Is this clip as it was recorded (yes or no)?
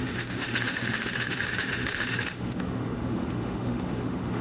no